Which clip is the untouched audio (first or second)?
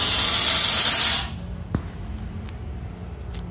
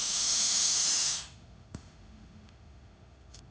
first